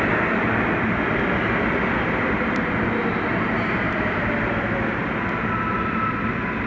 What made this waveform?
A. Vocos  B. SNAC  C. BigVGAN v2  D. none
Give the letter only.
D